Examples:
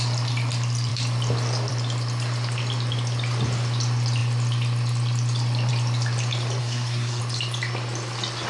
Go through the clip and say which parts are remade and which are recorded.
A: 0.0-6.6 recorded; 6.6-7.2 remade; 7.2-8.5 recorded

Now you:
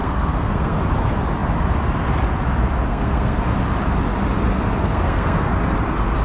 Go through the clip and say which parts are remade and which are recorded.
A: 0.0-0.8 remade; 0.8-2.9 recorded; 2.9-3.4 remade; 3.4-4.8 recorded; 4.8-5.5 remade; 5.5-6.2 recorded

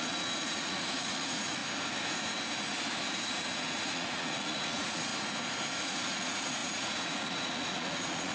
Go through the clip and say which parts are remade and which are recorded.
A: 0.0-1.6 remade; 1.6-3.1 recorded; 3.1-5.1 remade; 5.1-5.8 recorded; 5.8-8.3 remade

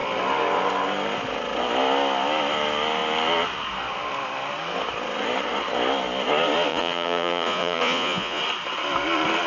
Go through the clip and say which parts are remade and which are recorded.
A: 0.0-6.7 recorded; 6.7-8.4 remade; 8.4-9.5 recorded

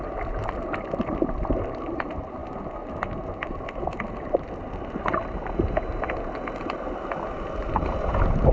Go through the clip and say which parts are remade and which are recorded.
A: 0.0-8.5 recorded